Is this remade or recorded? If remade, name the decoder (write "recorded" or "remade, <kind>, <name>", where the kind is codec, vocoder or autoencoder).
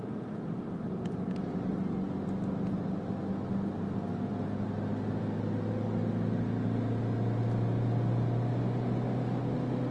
recorded